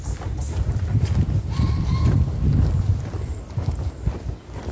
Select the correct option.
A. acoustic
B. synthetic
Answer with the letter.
A